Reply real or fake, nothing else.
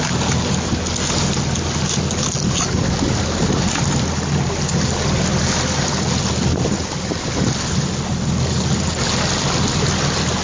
real